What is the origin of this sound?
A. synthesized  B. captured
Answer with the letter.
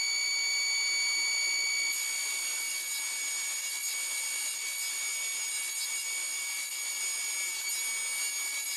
B